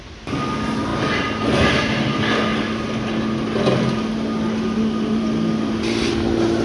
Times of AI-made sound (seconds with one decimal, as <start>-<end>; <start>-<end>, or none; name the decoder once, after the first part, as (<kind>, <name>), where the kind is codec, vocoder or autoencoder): none